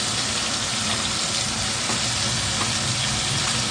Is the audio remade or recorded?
recorded